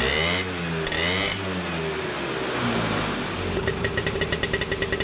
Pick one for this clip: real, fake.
real